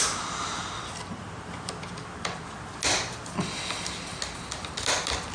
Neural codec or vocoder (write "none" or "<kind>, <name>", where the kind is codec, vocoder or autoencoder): none